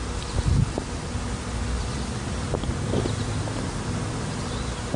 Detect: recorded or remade recorded